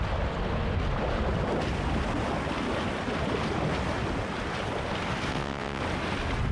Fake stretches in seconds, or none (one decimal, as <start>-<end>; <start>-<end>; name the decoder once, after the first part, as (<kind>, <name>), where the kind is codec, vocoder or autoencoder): 5.3-5.8 (vocoder, WaveNeXt)